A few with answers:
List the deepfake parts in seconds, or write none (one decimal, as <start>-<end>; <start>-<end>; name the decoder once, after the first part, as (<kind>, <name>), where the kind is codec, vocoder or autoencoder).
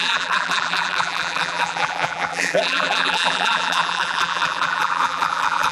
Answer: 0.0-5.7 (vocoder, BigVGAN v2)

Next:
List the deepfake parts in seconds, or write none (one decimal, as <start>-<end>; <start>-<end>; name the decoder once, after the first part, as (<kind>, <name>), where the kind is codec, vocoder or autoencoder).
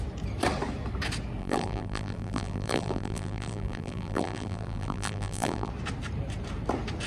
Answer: 1.4-5.7 (vocoder, BigVGAN v2)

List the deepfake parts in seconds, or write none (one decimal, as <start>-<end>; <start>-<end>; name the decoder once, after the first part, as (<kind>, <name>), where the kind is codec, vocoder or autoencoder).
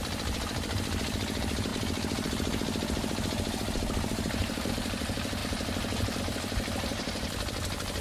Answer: 0.0-1.7 (vocoder, BigVGAN v2); 4.7-5.4; 6.2-8.0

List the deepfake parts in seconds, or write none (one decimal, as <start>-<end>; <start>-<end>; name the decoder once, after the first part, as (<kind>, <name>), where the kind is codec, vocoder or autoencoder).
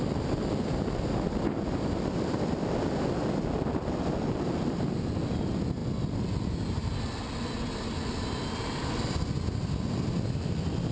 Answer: none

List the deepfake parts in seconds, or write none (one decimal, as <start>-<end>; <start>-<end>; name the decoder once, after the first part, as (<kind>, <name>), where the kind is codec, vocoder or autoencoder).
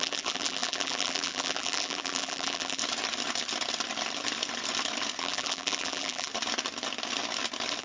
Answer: 0.0-2.8 (vocoder, BigVGAN v2); 5.2-6.3